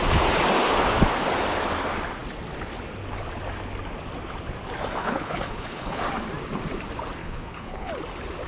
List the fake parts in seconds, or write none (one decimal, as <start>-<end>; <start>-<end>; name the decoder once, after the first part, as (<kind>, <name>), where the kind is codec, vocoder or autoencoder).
5.0-6.0 (codec, HILCodec); 7.2-7.9